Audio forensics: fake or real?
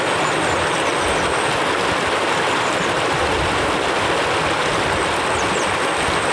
real